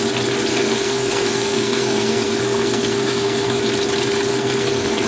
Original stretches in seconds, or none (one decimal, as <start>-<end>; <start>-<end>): 0.0-0.5; 3.6-4.3